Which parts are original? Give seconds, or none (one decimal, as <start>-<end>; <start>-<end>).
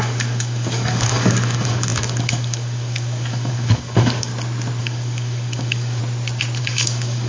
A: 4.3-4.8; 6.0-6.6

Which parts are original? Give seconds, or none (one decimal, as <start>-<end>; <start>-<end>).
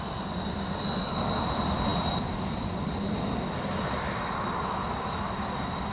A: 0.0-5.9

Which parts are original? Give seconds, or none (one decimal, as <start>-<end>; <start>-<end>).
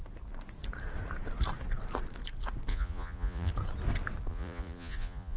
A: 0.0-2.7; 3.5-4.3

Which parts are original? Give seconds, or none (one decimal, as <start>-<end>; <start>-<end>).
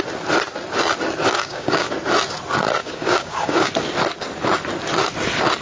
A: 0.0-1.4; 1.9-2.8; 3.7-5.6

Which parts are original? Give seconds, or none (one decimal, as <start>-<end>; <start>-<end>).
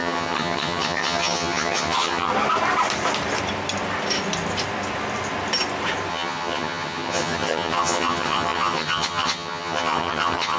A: 2.3-6.1